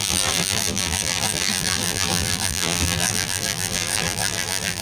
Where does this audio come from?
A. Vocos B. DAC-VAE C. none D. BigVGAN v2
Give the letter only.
D